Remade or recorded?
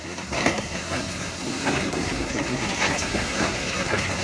remade